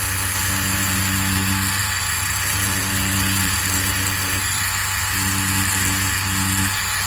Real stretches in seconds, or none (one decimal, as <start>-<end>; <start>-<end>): 0.0-0.4; 1.0-1.8; 4.3-7.1